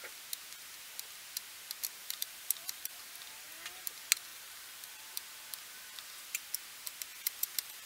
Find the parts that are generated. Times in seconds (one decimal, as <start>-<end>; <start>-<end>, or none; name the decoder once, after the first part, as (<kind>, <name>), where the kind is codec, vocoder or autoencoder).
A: 2.0-3.0 (vocoder, BigVGAN v2); 4.3-5.0; 7.1-7.9